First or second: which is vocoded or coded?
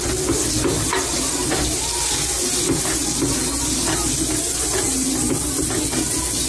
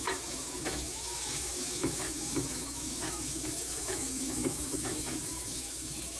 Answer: second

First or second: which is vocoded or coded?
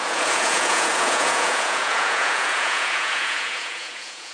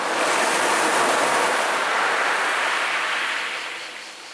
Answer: first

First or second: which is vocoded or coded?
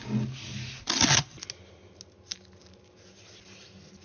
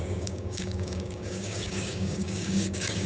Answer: second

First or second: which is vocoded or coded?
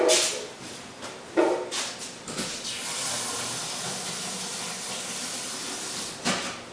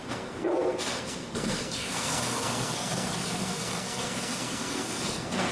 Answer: second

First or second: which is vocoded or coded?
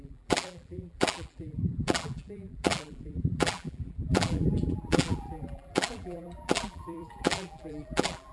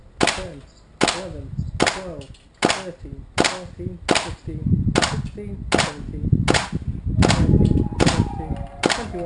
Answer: first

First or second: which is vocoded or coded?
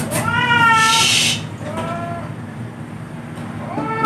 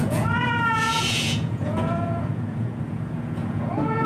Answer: second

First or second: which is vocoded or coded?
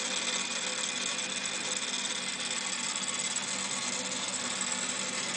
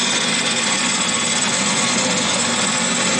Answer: second